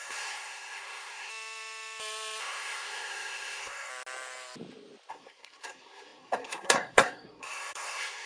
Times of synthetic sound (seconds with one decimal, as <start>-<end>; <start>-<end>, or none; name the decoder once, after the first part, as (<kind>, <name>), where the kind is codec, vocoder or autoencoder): 0.0-1.3 (codec, SNAC); 2.4-3.9; 5.1-8.3